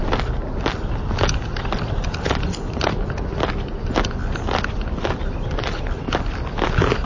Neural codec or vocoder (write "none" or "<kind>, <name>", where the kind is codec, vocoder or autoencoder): none